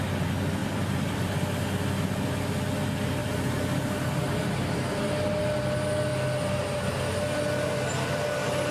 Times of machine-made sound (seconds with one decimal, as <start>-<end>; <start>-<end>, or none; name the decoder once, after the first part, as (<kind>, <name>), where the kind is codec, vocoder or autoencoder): 0.6-1.3 (vocoder, BigVGAN v2); 3.2-4.9